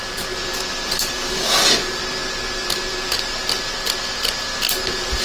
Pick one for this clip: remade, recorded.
recorded